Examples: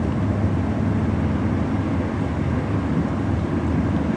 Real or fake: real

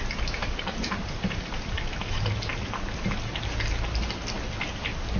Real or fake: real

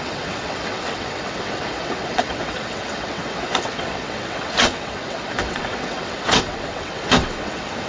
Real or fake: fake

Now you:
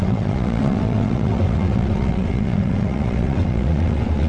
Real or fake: fake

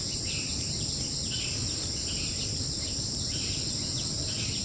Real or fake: real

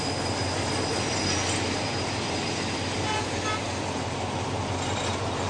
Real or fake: real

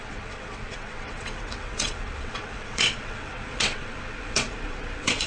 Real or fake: fake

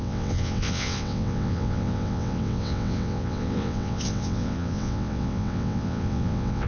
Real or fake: fake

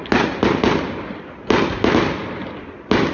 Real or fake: real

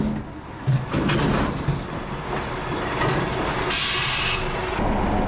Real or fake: real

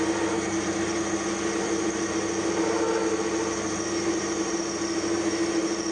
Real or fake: real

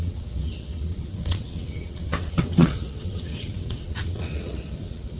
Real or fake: fake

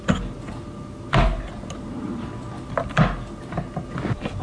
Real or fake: real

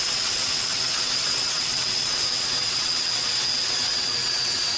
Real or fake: fake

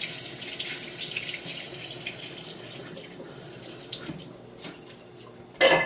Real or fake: real